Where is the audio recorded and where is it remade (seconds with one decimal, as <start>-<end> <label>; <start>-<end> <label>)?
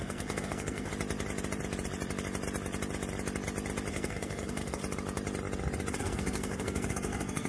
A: 0.0-0.9 remade; 0.9-3.9 recorded; 3.9-4.8 remade; 4.8-5.9 recorded; 5.9-7.5 remade